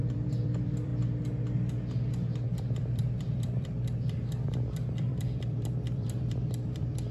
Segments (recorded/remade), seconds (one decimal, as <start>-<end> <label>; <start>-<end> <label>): 0.0-0.9 remade; 0.9-2.6 recorded; 2.6-7.1 remade